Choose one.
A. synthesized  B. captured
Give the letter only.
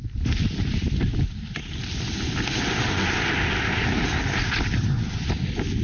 B